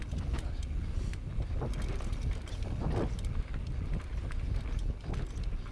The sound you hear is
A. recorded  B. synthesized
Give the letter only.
A